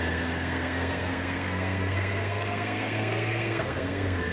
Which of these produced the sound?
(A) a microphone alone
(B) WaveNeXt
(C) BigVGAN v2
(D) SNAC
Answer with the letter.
D